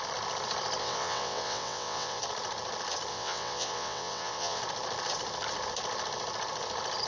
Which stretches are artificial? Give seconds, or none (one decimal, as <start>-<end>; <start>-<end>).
0.8-2.2; 3.1-4.6